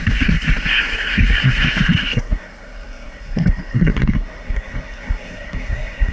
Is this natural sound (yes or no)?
no